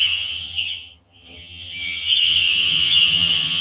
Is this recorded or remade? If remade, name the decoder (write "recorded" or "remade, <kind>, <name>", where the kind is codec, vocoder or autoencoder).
remade, vocoder, HiFi-GAN